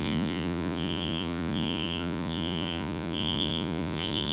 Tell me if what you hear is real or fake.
fake